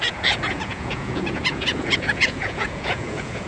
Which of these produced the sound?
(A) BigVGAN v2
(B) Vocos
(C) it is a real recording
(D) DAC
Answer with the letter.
B